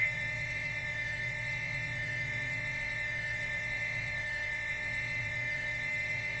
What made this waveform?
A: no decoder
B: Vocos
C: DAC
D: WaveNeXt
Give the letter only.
D